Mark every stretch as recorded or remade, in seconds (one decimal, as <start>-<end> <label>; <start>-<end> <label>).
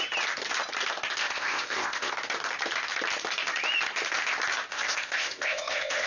0.0-1.2 recorded; 1.2-2.1 remade; 2.1-4.7 recorded; 4.7-6.1 remade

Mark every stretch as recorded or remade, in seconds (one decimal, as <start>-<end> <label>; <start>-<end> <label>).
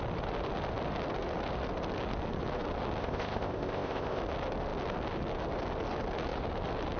0.0-3.0 recorded; 3.0-4.2 remade; 4.2-7.0 recorded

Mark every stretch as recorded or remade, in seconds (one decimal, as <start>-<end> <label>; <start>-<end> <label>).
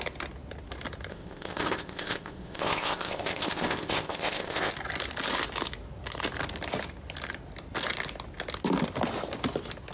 0.0-1.1 recorded; 1.1-4.7 remade; 4.7-9.9 recorded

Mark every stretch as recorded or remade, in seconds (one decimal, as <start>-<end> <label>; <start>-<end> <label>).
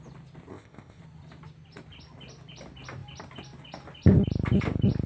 0.0-0.5 recorded; 0.5-1.0 remade; 1.0-5.1 recorded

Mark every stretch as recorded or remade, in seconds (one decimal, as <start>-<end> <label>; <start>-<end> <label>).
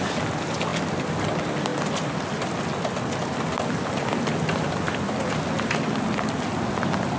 0.0-7.2 recorded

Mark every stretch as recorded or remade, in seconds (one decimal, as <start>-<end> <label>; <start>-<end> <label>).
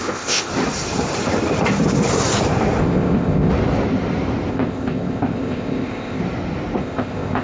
0.0-0.5 remade; 0.5-2.8 recorded; 2.8-3.5 remade; 3.5-4.5 recorded; 4.5-6.2 remade; 6.2-6.8 recorded; 6.8-7.4 remade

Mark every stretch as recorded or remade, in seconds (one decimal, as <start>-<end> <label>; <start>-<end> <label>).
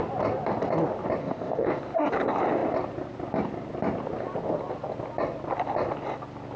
0.0-1.2 recorded; 1.2-1.8 remade; 1.8-6.6 recorded